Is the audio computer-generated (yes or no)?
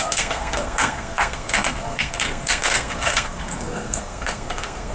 yes